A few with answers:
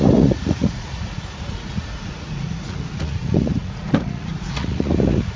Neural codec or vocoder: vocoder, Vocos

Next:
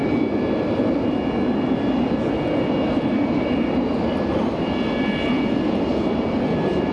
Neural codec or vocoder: none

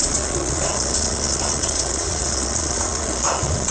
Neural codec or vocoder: vocoder, Vocos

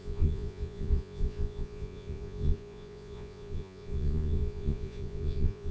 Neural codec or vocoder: vocoder, Vocos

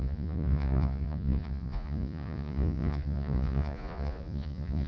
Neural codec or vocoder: vocoder, Vocos